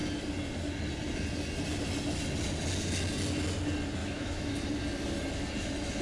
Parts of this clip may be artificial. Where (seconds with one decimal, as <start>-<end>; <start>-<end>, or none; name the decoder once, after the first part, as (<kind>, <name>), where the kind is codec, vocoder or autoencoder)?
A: 4.0-4.5 (autoencoder, DAC-VAE)